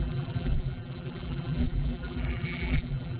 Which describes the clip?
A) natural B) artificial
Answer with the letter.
B